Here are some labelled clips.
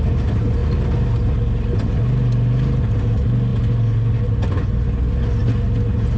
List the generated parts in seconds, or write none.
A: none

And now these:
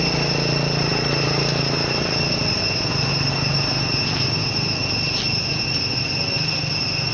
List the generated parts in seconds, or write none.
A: 0.9-1.9

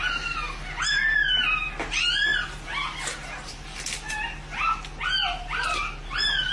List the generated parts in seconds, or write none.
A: none

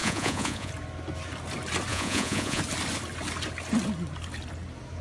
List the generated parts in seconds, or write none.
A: 0.0-0.7; 1.9-2.6

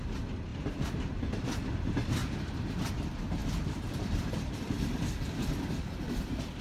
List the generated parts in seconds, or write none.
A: 0.0-2.2; 2.9-3.4; 4.0-6.6

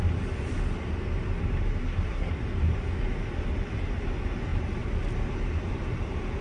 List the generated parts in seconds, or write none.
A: 1.8-2.3

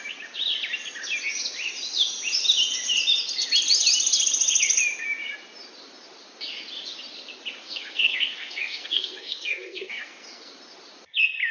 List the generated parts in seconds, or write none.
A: 7.6-10.5

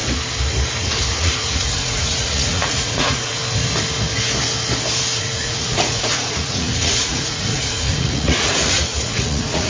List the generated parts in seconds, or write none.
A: 1.1-3.4; 5.2-9.7